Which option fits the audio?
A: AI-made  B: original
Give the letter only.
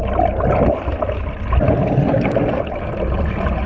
B